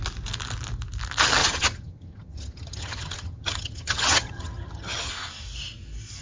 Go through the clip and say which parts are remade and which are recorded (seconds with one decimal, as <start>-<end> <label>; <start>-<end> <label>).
0.0-1.4 recorded; 1.4-5.1 remade; 5.1-6.2 recorded

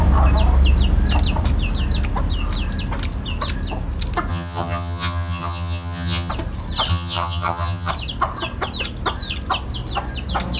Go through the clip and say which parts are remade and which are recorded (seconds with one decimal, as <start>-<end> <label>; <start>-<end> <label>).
0.0-4.3 recorded; 4.3-6.3 remade; 6.3-6.9 recorded; 6.9-7.9 remade; 7.9-10.6 recorded

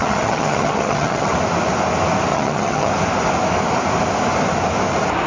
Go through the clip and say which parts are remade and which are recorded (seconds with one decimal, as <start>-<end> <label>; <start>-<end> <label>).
0.0-1.3 remade; 1.3-2.3 recorded; 2.3-2.9 remade; 2.9-5.3 recorded

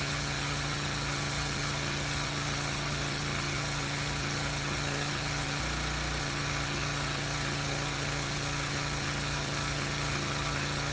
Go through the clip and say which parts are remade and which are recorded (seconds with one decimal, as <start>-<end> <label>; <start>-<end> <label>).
0.0-5.6 remade; 5.6-6.2 recorded; 6.2-10.9 remade

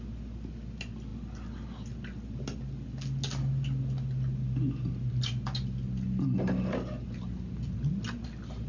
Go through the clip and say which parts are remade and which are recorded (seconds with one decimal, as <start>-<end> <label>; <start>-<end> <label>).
0.0-8.7 recorded

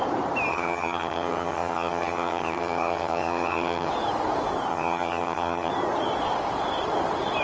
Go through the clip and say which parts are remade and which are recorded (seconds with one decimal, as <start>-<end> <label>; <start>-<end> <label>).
0.0-0.5 recorded; 0.5-3.9 remade; 3.9-4.7 recorded; 4.7-5.7 remade; 5.7-7.4 recorded